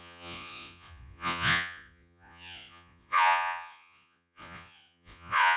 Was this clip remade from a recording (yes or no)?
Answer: yes